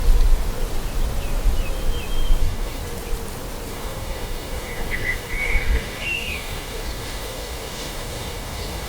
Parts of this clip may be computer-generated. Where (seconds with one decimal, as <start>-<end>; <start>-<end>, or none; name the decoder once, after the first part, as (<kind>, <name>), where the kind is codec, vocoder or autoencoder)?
2.4-2.8 (codec, DAC); 3.7-8.9